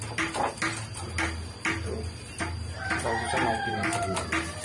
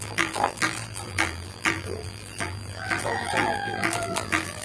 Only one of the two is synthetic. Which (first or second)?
second